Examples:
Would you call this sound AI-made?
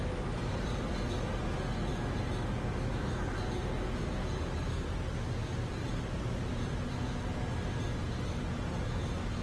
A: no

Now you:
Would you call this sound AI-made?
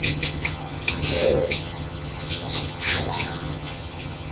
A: yes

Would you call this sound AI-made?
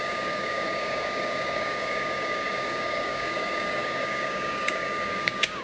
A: yes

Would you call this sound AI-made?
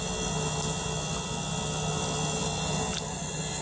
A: no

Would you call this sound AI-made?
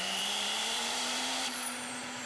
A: yes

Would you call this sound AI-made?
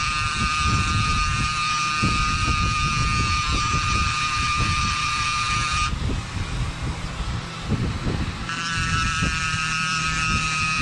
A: yes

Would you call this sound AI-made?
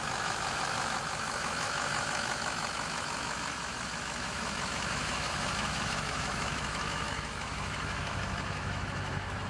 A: yes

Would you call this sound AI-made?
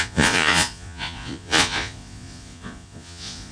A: yes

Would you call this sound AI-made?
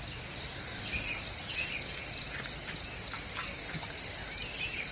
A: no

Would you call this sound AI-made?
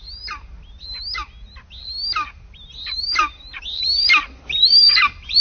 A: no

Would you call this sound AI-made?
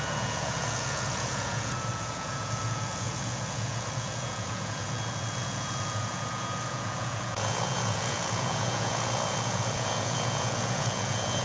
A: yes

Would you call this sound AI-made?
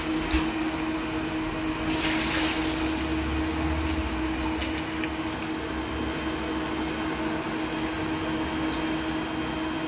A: no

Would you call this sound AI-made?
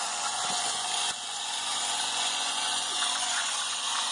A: yes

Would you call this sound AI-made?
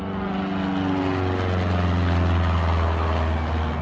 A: no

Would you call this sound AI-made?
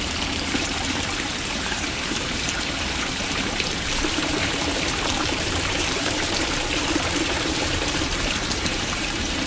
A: yes